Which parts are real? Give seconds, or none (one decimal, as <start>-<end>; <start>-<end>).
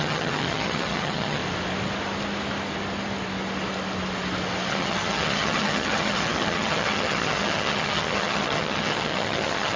1.4-4.7